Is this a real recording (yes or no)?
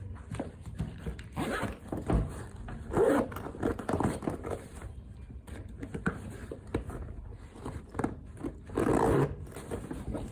yes